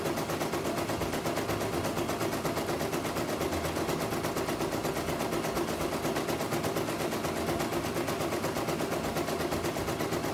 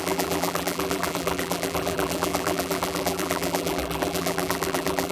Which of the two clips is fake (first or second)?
second